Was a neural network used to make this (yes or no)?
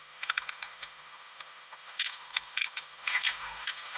yes